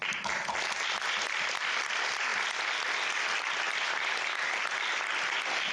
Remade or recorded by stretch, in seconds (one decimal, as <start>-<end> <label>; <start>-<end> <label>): 0.0-5.7 recorded